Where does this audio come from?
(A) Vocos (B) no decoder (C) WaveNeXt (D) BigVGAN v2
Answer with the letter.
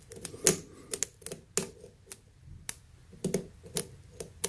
B